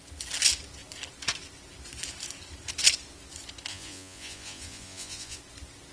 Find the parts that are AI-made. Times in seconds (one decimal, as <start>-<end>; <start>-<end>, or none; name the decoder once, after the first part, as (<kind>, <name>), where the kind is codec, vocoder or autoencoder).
3.7-5.4 (vocoder, Vocos)